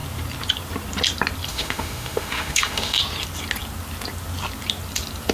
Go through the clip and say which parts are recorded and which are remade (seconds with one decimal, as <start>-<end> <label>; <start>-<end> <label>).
0.0-1.5 recorded; 1.5-3.0 remade; 3.0-5.3 recorded